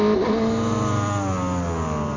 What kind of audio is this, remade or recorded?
recorded